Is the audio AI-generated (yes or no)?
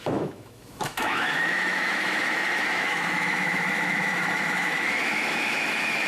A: yes